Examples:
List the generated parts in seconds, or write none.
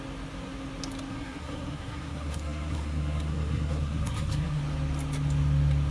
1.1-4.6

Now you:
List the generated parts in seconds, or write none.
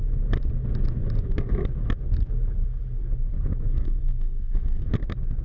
3.7-4.9